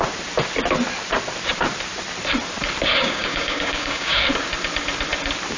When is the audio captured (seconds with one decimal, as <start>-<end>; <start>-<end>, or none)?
0.0-2.9; 4.2-5.6